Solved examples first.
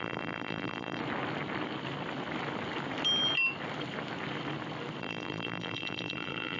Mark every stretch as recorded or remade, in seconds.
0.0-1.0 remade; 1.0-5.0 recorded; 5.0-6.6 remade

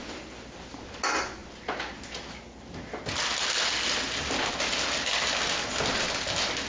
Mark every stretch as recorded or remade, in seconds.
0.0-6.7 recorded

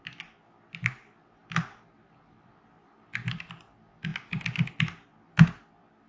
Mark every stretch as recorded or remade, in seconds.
0.0-6.1 recorded

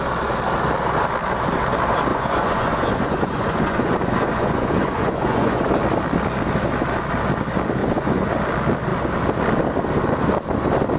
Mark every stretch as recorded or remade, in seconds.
0.0-2.1 recorded; 2.1-5.7 remade; 5.7-7.8 recorded; 7.8-8.3 remade; 8.3-11.0 recorded

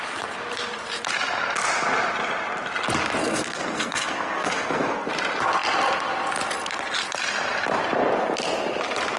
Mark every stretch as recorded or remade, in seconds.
0.0-3.2 recorded; 3.2-5.1 remade; 5.1-9.2 recorded

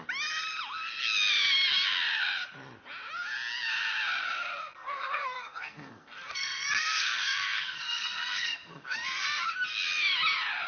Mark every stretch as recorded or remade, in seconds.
0.0-4.6 recorded; 4.6-9.5 remade; 9.5-10.7 recorded

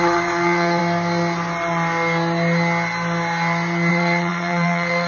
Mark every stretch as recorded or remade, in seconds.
0.0-0.8 remade; 0.8-3.9 recorded; 3.9-5.1 remade